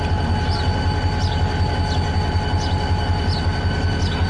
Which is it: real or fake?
real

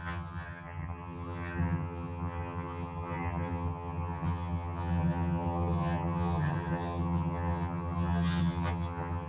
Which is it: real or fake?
fake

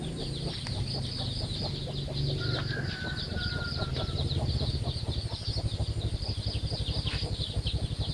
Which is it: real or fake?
real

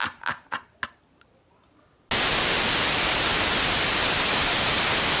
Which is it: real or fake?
real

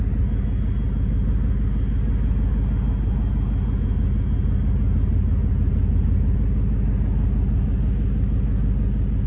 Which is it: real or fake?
real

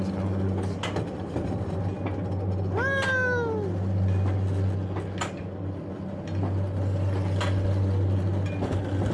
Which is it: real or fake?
real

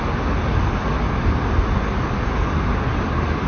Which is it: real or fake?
real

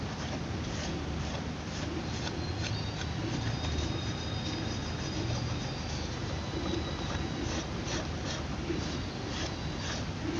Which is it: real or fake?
real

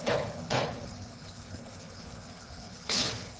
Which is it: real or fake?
fake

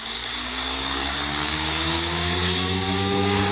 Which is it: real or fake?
fake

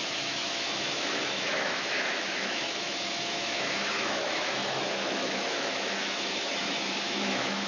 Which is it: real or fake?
fake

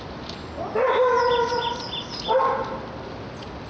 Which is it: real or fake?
real